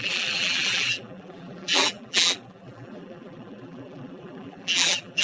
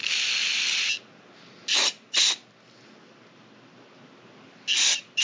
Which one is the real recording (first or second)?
second